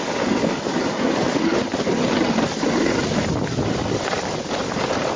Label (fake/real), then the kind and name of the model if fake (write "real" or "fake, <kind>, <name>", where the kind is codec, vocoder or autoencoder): real